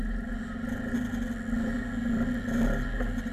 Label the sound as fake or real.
real